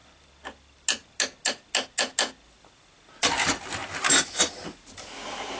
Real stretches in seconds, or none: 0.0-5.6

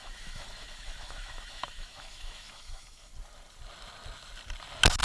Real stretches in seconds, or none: 3.1-5.0

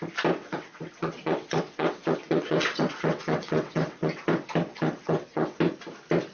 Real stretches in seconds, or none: 0.0-0.4; 4.2-4.7; 5.6-6.3

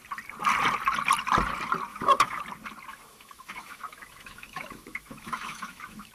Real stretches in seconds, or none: 0.0-1.9; 2.4-2.9